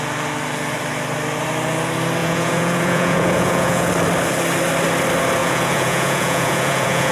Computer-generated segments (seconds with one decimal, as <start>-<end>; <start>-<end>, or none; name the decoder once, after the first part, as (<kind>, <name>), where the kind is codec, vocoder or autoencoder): 2.2-3.9 (vocoder, Vocos); 5.4-7.1